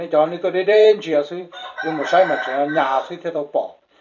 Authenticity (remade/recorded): remade